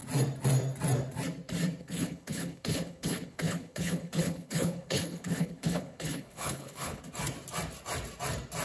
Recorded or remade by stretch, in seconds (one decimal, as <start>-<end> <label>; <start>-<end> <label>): 0.0-1.8 recorded; 1.8-7.0 remade; 7.0-8.6 recorded

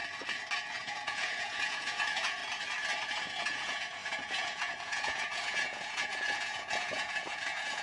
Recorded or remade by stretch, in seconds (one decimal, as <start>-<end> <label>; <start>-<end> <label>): 0.0-0.8 recorded; 0.8-2.4 remade; 2.4-3.1 recorded; 3.1-7.8 remade

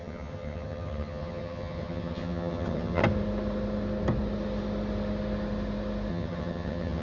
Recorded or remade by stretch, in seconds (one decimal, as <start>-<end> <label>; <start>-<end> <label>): 0.0-3.0 remade; 3.0-6.1 recorded; 6.1-7.0 remade

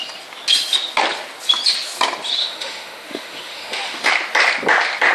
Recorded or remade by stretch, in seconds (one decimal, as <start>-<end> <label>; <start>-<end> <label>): 0.0-2.4 recorded; 2.4-4.1 remade; 4.1-5.1 recorded

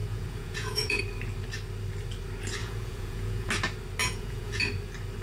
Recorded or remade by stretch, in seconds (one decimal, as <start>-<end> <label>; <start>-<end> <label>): 0.0-1.0 remade; 1.0-2.6 recorded; 2.6-3.5 remade; 3.5-4.0 recorded; 4.0-4.6 remade; 4.6-5.2 recorded

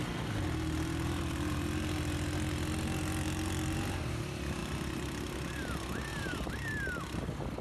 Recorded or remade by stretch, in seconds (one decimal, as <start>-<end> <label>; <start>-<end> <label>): 0.0-7.6 recorded